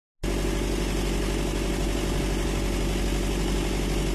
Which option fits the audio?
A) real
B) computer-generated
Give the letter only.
A